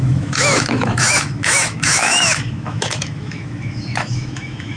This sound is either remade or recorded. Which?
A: remade